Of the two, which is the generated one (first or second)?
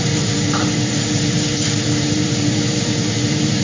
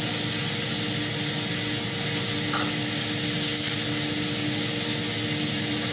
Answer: first